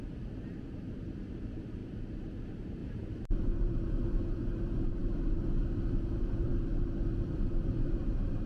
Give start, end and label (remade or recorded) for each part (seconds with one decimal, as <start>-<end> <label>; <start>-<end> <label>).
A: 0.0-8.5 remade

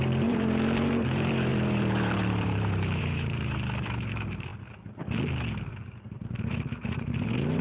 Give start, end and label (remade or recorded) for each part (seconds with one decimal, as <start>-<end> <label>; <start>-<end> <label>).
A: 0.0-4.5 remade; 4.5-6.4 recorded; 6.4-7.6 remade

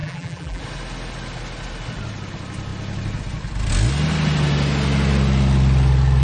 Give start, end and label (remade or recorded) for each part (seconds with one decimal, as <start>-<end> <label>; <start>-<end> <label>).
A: 0.0-0.6 remade; 0.6-6.2 recorded

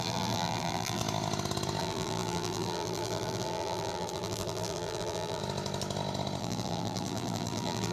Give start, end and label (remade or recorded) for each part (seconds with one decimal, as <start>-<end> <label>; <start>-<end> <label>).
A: 0.0-1.0 remade; 1.0-1.8 recorded; 1.8-5.4 remade; 5.4-6.4 recorded; 6.4-7.9 remade

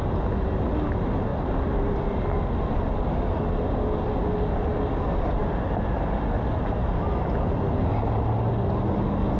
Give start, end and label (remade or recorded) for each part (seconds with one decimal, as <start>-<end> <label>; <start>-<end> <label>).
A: 0.0-9.4 recorded